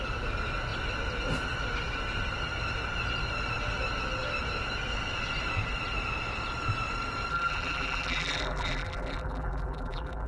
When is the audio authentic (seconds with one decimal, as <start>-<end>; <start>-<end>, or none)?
0.0-7.3